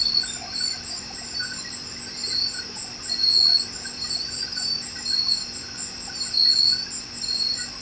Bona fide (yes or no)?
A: yes